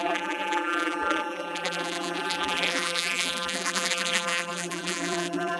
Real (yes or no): no